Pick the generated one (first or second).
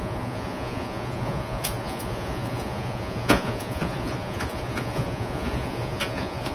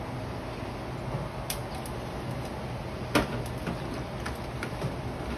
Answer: first